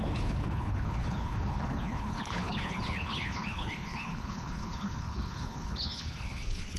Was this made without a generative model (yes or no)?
no